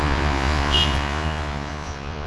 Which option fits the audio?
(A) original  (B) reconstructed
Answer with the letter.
B